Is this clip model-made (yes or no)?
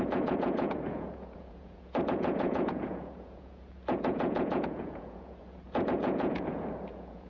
yes